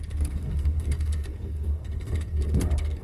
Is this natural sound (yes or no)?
no